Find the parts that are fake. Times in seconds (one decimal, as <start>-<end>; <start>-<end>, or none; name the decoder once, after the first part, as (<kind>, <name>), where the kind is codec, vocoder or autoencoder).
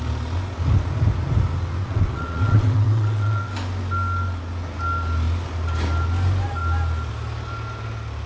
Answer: 1.8-3.5 (vocoder, WaveNeXt)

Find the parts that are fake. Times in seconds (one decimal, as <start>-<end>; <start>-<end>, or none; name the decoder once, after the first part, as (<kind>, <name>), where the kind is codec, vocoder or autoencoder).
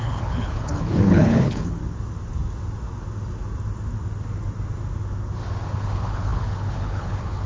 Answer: 0.0-1.8 (codec, HILCodec); 5.7-7.5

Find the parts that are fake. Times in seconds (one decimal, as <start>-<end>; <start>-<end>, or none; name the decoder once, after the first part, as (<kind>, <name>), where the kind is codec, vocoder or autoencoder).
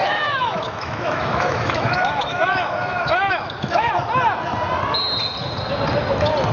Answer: 0.0-3.9 (autoencoder, DAC-VAE)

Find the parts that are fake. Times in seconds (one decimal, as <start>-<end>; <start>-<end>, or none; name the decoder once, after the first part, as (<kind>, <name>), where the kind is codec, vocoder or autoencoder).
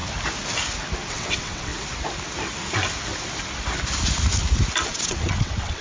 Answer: 1.1-1.7 (vocoder, WaveNeXt); 4.9-5.8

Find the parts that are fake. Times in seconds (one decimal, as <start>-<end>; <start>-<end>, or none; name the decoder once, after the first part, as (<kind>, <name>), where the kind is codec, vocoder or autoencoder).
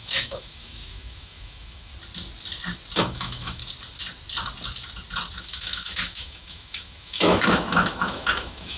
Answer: 0.0-1.9 (autoencoder, DAC-VAE); 3.0-3.6; 5.4-8.8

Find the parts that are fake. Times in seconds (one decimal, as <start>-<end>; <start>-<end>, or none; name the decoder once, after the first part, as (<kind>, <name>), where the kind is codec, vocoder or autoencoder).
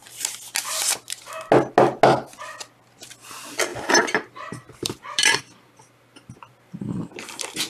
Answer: 3.7-5.4 (vocoder, BigVGAN v2)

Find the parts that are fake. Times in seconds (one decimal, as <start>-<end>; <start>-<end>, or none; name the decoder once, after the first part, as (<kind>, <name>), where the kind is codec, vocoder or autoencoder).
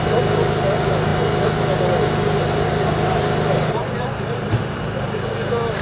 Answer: 3.8-5.3 (vocoder, BigVGAN v2)